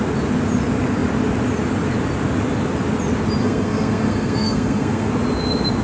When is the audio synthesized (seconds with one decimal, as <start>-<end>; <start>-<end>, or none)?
3.4-5.1